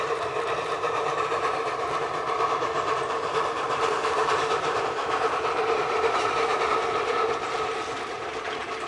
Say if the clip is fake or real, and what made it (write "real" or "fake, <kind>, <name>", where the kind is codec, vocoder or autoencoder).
fake, vocoder, BigVGAN v2